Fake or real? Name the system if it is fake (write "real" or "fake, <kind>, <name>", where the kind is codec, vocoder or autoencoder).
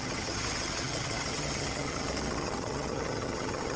fake, vocoder, HiFi-GAN